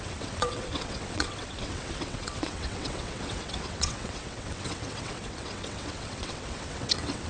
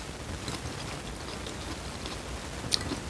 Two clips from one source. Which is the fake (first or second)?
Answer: first